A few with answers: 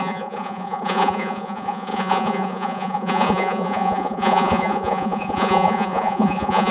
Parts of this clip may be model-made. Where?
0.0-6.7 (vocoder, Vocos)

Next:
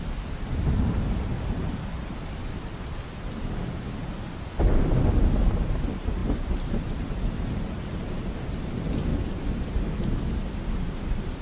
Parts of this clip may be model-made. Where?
0.0-1.3 (vocoder, BigVGAN v2); 5.2-9.1; 9.7-11.4